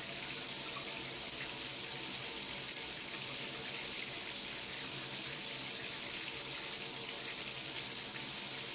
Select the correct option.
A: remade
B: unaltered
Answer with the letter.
B